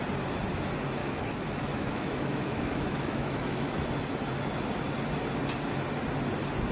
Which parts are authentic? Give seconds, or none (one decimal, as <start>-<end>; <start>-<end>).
0.0-1.0; 3.8-6.7